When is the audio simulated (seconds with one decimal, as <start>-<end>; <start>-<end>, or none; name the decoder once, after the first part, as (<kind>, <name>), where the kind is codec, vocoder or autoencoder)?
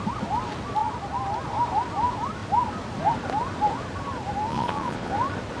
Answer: 4.5-5.1 (vocoder, Vocos)